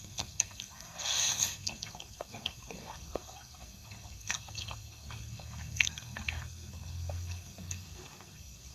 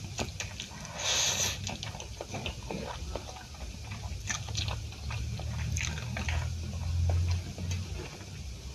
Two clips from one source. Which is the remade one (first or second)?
first